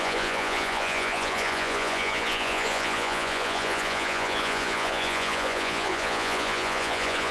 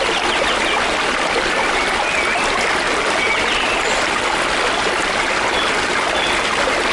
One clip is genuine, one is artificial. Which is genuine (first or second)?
second